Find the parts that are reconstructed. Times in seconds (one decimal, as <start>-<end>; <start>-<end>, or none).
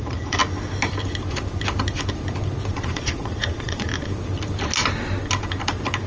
0.0-0.4; 2.7-3.9